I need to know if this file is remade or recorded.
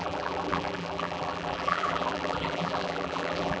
remade